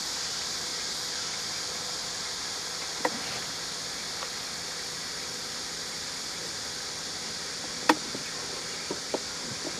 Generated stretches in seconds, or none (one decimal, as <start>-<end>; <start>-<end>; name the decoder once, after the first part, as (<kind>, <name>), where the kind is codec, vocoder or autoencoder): none